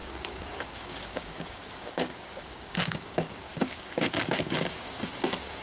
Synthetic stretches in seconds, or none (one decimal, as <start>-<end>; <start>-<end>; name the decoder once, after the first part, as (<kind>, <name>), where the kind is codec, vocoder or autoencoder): 0.0-5.6 (codec, DAC)